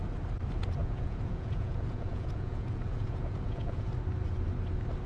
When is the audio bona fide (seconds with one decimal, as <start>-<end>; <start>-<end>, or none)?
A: 0.0-0.8; 3.9-5.1